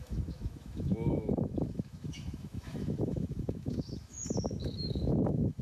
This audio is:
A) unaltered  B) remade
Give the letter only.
B